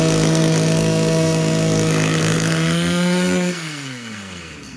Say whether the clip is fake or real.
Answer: fake